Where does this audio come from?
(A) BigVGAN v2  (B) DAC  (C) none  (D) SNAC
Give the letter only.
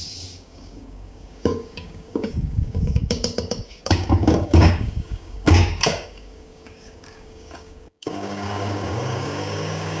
B